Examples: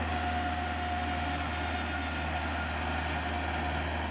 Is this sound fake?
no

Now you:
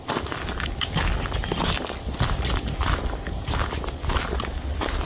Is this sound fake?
no